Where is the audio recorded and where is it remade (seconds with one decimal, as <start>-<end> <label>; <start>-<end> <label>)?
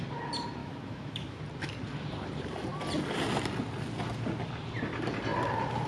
0.0-0.6 recorded; 0.6-1.4 remade; 1.4-5.9 recorded